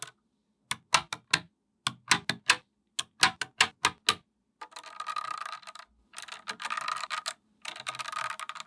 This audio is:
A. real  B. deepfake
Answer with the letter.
A